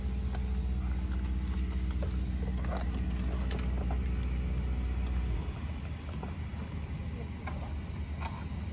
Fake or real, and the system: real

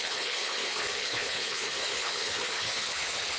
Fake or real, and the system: fake, codec, HILCodec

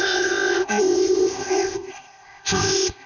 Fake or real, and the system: fake, codec, ZipCodec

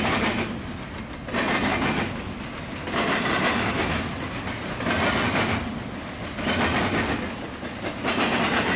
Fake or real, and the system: real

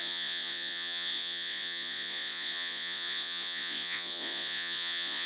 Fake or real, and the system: fake, vocoder, Vocos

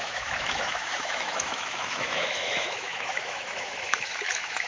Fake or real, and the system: fake, autoencoder, DAC-VAE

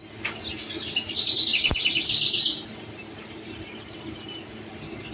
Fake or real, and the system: real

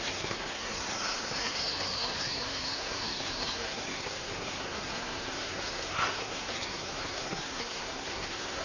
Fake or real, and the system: fake, codec, SNAC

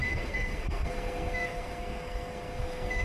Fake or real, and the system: fake, codec, SNAC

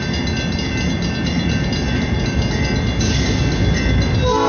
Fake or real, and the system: real